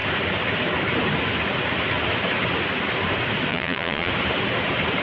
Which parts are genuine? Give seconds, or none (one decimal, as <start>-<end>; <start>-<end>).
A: 0.0-3.5; 4.1-5.0